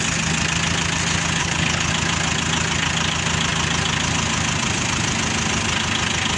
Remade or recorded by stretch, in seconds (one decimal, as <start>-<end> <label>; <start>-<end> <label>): 0.0-1.4 recorded; 1.4-1.9 remade; 1.9-6.4 recorded